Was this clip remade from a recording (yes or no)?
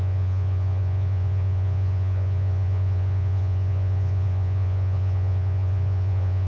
yes